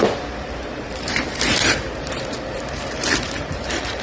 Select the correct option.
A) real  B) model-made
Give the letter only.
B